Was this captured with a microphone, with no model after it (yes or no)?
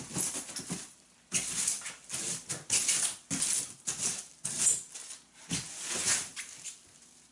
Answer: yes